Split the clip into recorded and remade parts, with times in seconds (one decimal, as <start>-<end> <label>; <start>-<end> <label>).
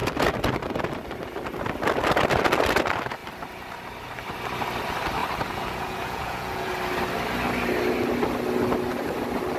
0.0-5.2 recorded; 5.2-6.7 remade; 6.7-9.6 recorded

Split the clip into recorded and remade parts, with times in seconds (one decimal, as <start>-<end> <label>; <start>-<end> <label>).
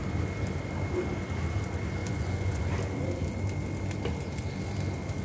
0.0-2.0 recorded; 2.0-2.7 remade; 2.7-5.2 recorded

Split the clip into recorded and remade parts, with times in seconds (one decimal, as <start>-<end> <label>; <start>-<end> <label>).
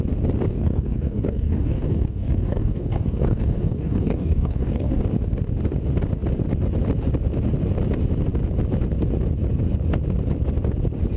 0.0-0.5 recorded; 0.5-5.0 remade; 5.0-11.2 recorded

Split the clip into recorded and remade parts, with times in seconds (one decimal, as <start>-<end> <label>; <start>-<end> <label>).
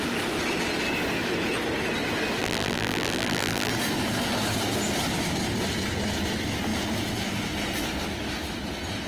0.0-2.4 recorded; 2.4-3.7 remade; 3.7-9.1 recorded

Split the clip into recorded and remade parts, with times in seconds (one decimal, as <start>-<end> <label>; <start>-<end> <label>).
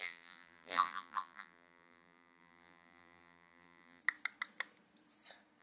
0.0-4.0 remade; 4.0-5.6 recorded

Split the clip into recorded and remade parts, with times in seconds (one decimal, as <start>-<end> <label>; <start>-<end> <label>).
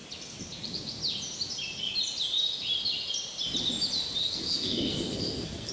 0.0-4.2 recorded; 4.2-5.7 remade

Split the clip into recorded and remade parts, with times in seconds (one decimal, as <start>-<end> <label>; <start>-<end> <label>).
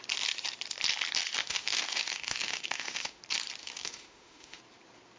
0.0-1.4 recorded; 1.4-3.2 remade; 3.2-3.6 recorded; 3.6-4.6 remade; 4.6-5.2 recorded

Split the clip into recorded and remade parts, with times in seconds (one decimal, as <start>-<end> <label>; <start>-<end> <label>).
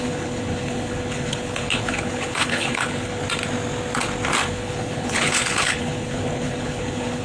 0.0-3.2 remade; 3.2-4.5 recorded; 4.5-7.2 remade